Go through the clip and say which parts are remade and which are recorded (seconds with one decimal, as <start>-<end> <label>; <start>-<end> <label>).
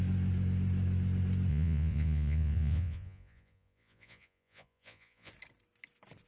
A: 0.0-1.5 recorded; 1.5-5.3 remade; 5.3-6.3 recorded